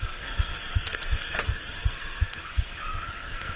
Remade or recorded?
remade